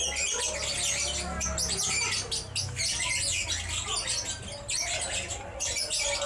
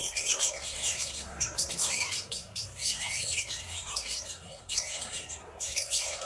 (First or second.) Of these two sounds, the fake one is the second